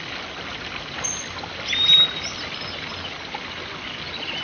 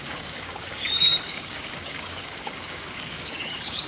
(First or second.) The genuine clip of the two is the first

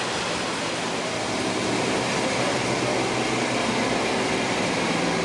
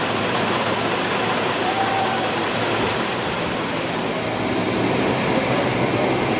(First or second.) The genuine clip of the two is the first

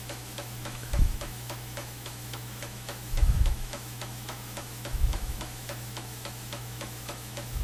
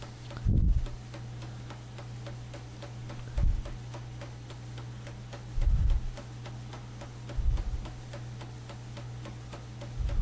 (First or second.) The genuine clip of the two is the second